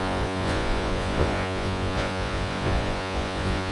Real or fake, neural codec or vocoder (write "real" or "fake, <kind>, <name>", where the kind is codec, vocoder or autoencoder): fake, vocoder, Vocos